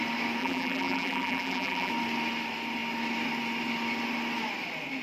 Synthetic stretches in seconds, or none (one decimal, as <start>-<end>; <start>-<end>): 0.4-1.9